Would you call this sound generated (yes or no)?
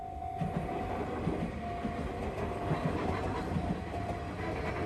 no